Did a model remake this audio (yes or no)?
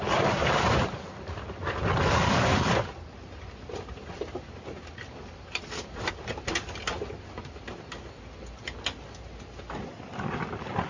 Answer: no